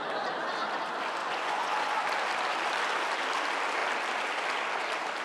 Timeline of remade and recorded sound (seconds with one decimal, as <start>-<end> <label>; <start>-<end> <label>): 0.0-1.2 recorded; 1.2-2.0 remade; 2.0-5.2 recorded